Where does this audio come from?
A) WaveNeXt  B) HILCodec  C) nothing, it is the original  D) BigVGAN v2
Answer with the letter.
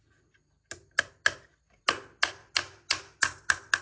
C